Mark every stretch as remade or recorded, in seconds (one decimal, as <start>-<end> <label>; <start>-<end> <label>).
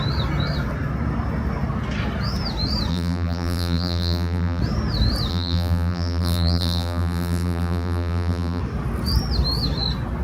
0.0-2.9 recorded; 2.9-4.6 remade; 4.6-5.3 recorded; 5.3-8.6 remade; 8.6-10.2 recorded